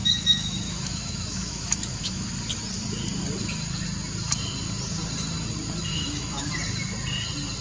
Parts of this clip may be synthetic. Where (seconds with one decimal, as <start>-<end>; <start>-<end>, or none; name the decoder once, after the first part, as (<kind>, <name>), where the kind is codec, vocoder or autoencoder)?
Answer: 0.0-2.3 (autoencoder, DAC-VAE); 5.9-6.5